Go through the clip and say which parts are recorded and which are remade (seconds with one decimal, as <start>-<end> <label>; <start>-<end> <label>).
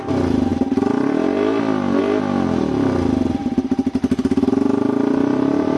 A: 0.0-5.8 recorded